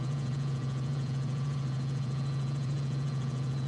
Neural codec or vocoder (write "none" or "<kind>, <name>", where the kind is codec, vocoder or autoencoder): vocoder, Vocos